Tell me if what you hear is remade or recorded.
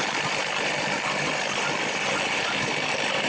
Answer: recorded